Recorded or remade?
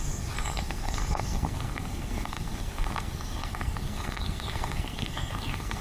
remade